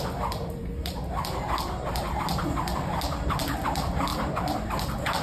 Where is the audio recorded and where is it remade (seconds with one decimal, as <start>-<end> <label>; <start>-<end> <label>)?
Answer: 0.0-5.2 recorded